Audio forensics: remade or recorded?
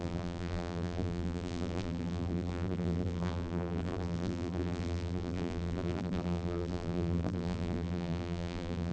remade